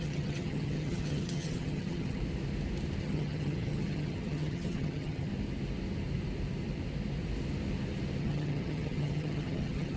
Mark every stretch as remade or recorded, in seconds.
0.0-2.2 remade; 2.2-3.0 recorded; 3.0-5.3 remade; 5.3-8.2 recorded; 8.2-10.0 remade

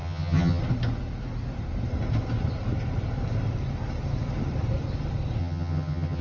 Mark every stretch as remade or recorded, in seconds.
0.0-0.6 remade; 0.6-5.4 recorded; 5.4-6.2 remade

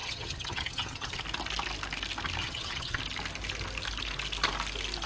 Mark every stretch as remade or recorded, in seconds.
0.0-1.2 remade; 1.2-2.4 recorded; 2.4-3.0 remade; 3.0-5.1 recorded

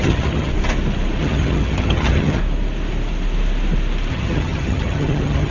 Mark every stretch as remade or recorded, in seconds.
0.0-0.5 remade; 0.5-1.2 recorded; 1.2-2.4 remade; 2.4-4.1 recorded; 4.1-5.5 remade

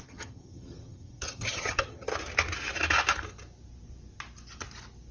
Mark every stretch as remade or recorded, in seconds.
0.0-2.1 remade; 2.1-5.1 recorded

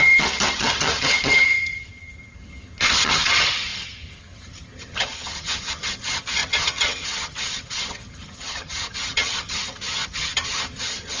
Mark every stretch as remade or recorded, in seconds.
0.0-11.2 remade

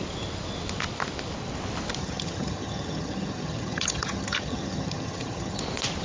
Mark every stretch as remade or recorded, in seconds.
0.0-2.0 recorded; 2.0-5.6 remade; 5.6-6.0 recorded

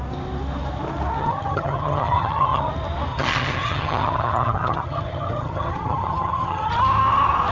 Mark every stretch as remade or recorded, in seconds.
0.0-1.2 recorded; 1.2-2.7 remade; 2.7-3.1 recorded; 3.1-6.7 remade; 6.7-7.5 recorded